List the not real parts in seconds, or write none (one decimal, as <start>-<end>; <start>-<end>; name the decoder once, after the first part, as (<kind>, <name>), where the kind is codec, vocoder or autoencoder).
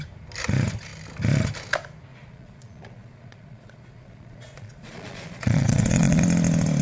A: 2.1-6.2 (vocoder, Vocos)